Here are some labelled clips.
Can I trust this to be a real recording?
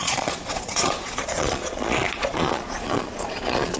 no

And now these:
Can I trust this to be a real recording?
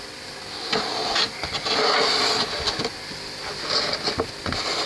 yes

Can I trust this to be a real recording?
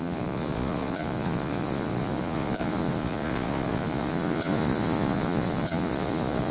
no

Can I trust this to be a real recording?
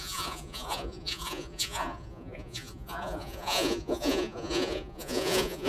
no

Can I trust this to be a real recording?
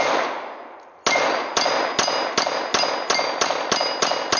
yes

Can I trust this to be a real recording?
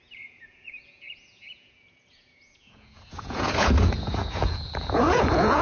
no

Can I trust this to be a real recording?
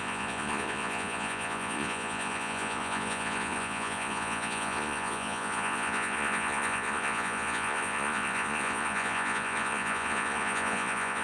no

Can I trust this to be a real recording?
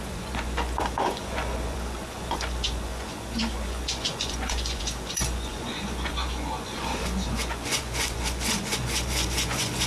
no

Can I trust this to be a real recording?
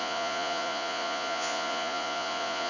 no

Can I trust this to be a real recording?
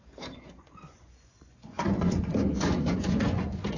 no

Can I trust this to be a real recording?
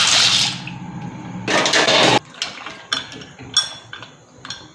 yes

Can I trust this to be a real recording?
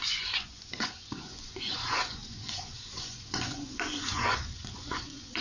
no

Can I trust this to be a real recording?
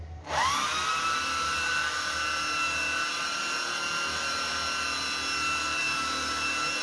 yes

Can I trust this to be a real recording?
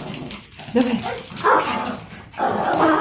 yes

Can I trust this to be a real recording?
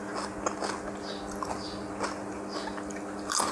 yes